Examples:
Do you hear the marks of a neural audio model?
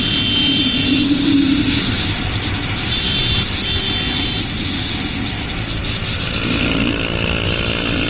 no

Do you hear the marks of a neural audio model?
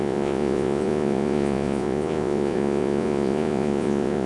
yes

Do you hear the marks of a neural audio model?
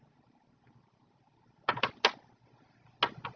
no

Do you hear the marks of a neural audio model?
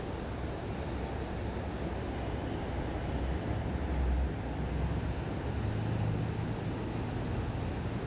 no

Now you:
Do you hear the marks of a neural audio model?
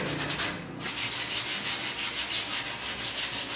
no